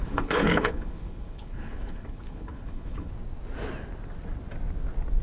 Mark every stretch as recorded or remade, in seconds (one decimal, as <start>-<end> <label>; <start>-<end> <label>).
0.0-3.1 remade; 3.1-5.2 recorded